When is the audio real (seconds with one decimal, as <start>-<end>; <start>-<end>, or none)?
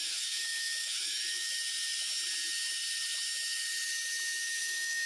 1.5-4.6